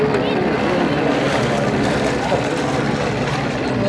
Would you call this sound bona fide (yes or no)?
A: yes